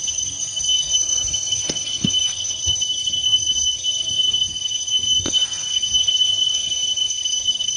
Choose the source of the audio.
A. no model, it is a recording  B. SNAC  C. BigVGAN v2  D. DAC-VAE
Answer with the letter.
B